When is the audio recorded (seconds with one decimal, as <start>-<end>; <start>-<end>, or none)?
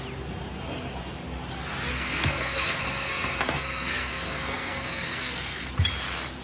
0.0-1.9; 5.7-6.4